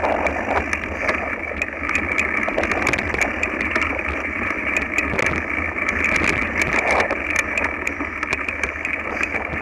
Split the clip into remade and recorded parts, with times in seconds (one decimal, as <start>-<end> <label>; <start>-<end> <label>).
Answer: 0.0-9.6 recorded